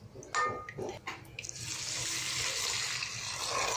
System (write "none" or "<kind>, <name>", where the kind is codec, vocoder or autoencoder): none